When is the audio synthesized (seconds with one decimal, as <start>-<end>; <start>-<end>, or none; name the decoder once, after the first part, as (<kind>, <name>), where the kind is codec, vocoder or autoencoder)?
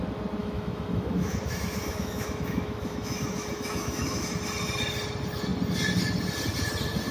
0.4-4.3 (autoencoder, DAC-VAE)